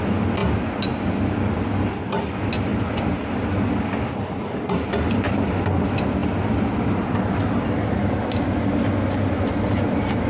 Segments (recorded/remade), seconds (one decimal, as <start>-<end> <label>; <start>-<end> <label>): 0.0-10.3 recorded

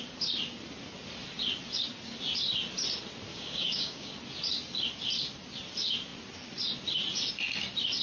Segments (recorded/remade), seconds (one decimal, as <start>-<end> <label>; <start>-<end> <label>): 0.0-3.3 recorded; 3.3-4.1 remade; 4.1-8.0 recorded